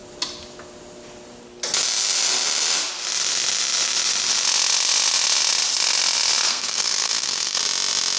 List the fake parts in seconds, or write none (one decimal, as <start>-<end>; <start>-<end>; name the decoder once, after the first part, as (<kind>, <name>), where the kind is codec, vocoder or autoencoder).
6.5-7.6 (codec, SNAC)